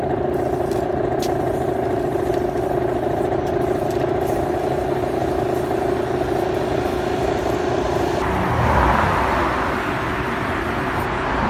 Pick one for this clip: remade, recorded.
recorded